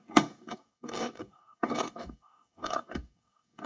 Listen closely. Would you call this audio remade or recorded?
remade